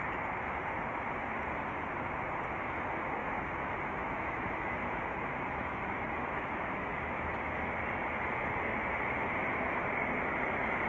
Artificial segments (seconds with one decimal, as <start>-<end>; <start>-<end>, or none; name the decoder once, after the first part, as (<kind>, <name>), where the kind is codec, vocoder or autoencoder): 3.2-7.5 (autoencoder, DAC-VAE)